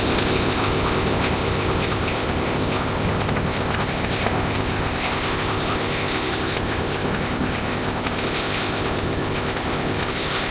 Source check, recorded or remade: remade